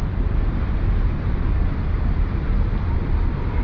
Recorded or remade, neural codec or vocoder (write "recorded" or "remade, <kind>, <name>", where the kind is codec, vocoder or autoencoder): recorded